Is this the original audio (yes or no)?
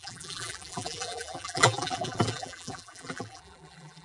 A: no